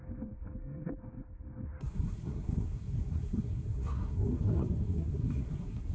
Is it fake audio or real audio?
fake